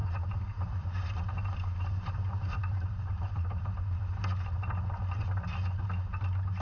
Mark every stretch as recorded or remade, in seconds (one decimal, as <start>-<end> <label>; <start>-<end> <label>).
0.0-4.0 remade; 4.0-6.6 recorded